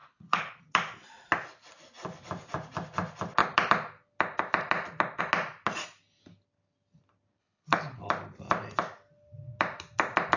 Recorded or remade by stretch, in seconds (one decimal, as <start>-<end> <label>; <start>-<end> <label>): 0.0-0.6 remade; 0.6-7.4 recorded; 7.4-8.1 remade; 8.1-10.4 recorded